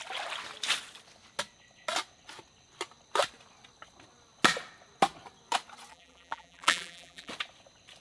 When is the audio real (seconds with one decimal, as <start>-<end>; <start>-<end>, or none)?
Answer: 0.0-5.9; 7.3-8.0